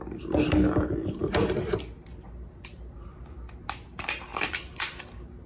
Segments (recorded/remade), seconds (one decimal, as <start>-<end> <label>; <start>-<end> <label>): 0.0-1.2 recorded; 1.2-3.5 remade; 3.5-4.3 recorded; 4.3-4.9 remade; 4.9-5.5 recorded